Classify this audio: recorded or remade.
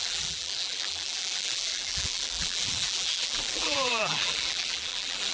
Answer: remade